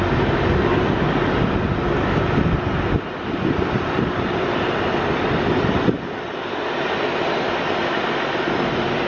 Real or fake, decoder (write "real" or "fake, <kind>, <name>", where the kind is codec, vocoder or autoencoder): real